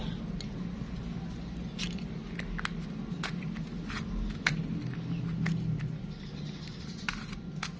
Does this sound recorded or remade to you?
recorded